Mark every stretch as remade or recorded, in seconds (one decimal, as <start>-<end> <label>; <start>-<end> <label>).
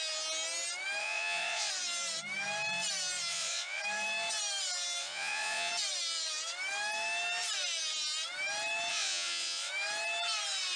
0.0-1.0 recorded; 1.0-1.7 remade; 1.7-3.3 recorded; 3.3-3.8 remade; 3.8-5.0 recorded; 5.0-5.7 remade; 5.7-8.9 recorded; 8.9-9.7 remade; 9.7-10.8 recorded